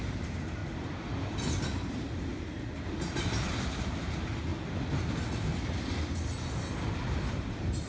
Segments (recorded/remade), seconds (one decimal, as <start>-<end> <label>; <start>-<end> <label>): 0.0-0.6 remade; 0.6-1.9 recorded; 1.9-4.5 remade; 4.5-7.1 recorded; 7.1-7.9 remade